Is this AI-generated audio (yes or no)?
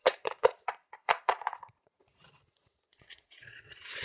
yes